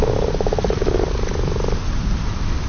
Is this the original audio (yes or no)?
yes